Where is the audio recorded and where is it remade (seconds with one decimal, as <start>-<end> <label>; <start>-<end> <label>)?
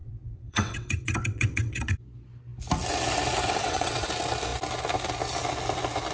0.0-1.9 remade; 1.9-3.6 recorded; 3.6-4.1 remade; 4.1-6.1 recorded